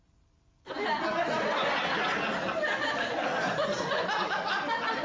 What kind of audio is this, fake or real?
real